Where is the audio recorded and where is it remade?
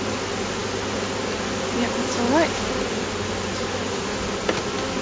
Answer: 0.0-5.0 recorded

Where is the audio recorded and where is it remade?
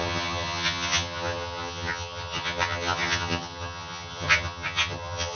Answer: 0.0-5.4 remade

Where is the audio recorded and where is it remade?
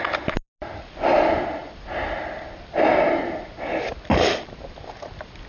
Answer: 0.0-5.5 recorded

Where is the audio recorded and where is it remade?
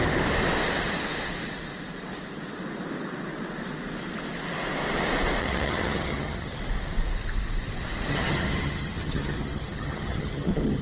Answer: 0.0-5.4 recorded; 5.4-6.6 remade; 6.6-8.1 recorded; 8.1-10.8 remade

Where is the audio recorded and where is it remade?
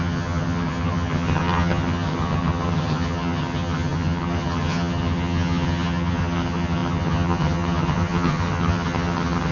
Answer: 0.0-9.5 remade